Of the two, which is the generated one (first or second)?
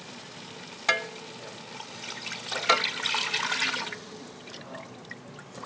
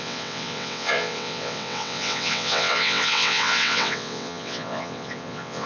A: second